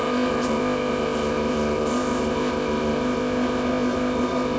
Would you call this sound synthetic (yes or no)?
yes